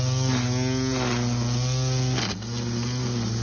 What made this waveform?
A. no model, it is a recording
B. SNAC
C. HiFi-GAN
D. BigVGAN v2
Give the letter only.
A